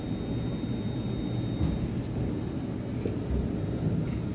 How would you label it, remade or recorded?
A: recorded